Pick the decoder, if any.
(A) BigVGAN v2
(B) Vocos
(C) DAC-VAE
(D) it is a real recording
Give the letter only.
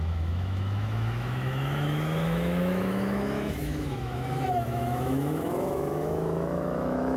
C